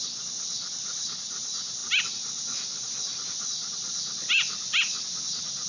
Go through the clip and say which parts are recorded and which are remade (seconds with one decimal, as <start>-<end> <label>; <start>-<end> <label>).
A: 0.0-5.7 recorded